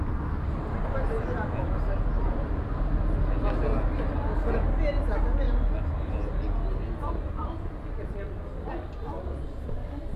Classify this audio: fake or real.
real